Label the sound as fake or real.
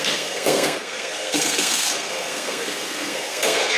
fake